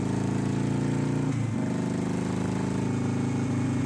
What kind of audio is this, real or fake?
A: real